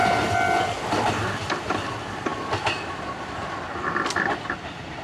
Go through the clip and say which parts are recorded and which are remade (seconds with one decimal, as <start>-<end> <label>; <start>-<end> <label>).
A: 0.0-5.0 recorded